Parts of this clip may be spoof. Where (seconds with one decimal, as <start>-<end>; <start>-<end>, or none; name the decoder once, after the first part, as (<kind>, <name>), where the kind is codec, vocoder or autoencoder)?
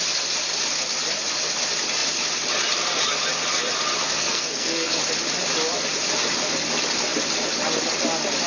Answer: 4.0-4.9 (codec, SNAC)